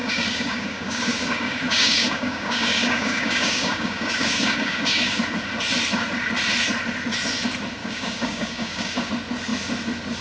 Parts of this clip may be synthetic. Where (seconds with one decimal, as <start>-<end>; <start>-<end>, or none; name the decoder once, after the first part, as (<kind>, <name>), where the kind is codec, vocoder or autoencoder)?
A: 0.0-5.2 (codec, DAC); 7.8-9.1